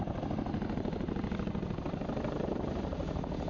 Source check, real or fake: real